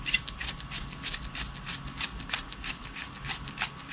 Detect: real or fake real